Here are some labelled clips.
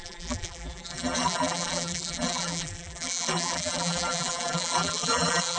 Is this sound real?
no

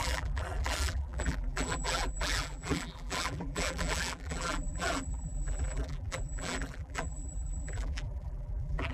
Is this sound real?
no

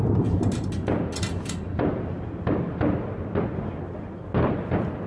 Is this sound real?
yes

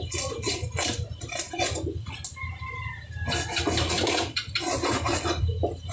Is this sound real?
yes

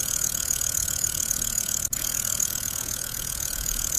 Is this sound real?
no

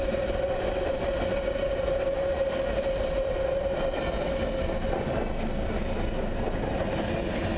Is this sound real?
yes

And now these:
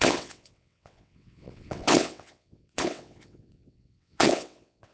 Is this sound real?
no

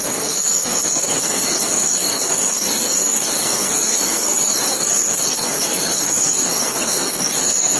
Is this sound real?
no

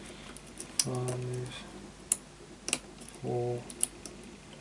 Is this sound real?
yes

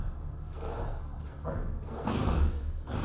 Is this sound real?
no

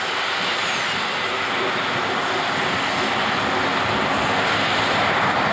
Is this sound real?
yes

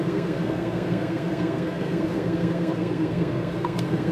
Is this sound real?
no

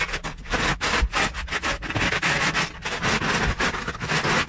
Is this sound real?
yes